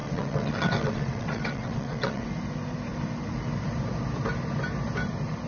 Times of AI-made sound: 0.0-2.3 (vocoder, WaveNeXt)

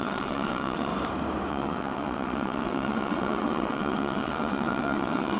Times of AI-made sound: 0.0-0.9 (vocoder, WaveNeXt); 1.5-5.4

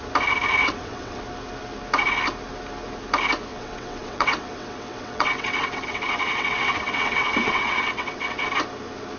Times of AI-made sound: 0.6-1.2 (vocoder, WaveNeXt); 3.5-8.5